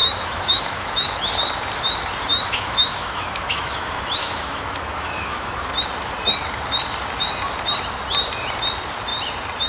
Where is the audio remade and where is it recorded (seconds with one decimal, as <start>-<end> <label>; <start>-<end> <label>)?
0.0-1.3 remade; 1.3-2.3 recorded; 2.3-5.5 remade; 5.5-9.7 recorded